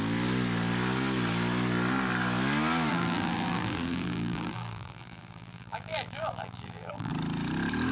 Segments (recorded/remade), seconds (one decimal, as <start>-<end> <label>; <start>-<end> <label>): 0.0-2.9 recorded; 2.9-7.1 remade; 7.1-7.9 recorded